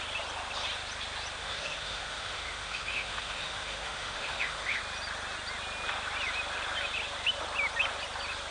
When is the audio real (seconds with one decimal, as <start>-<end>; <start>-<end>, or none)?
0.0-1.4; 4.8-8.5